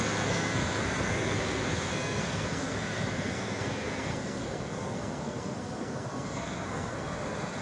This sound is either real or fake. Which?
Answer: fake